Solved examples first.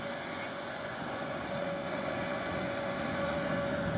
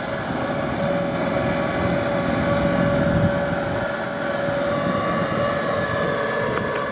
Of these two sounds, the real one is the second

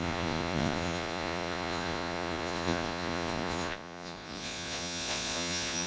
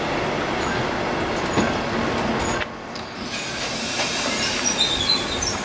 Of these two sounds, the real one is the second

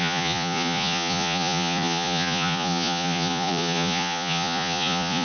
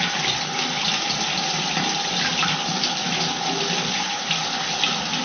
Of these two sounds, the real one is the second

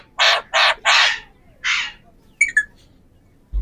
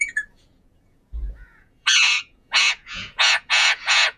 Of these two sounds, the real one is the first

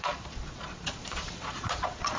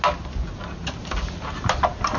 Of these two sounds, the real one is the second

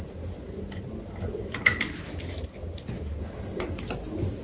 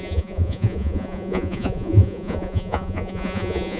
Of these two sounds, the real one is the first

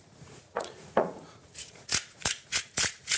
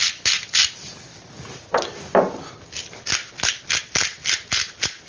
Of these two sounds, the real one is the second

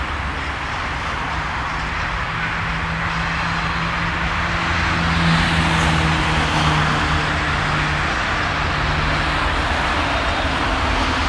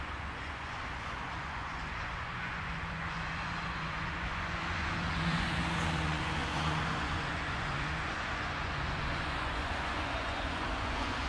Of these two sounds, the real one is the first